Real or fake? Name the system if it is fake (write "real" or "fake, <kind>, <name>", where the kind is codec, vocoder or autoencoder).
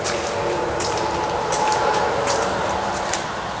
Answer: fake, vocoder, BigVGAN v2